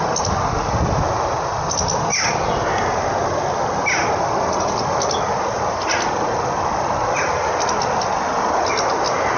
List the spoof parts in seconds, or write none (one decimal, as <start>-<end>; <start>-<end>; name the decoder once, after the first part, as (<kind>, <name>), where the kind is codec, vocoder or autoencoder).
none